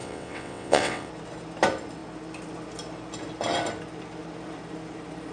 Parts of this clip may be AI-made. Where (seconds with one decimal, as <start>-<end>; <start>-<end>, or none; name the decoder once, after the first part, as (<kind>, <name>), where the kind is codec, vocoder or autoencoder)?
0.0-1.1 (vocoder, WaveNeXt)